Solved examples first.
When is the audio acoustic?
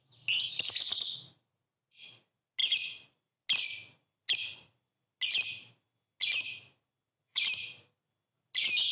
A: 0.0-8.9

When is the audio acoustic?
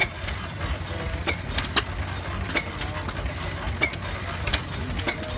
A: 0.6-5.4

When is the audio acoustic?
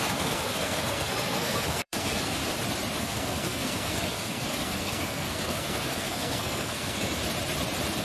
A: 2.4-3.0; 7.2-8.0